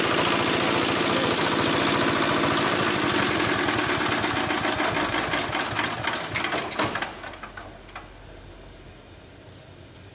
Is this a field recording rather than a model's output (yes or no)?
yes